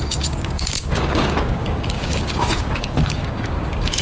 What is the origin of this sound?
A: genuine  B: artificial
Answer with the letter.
B